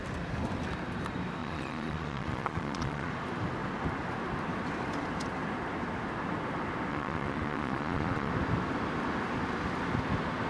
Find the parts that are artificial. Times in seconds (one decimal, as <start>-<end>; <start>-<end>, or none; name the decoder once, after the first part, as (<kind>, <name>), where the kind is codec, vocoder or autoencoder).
1.4-3.1 (vocoder, Vocos); 6.9-8.3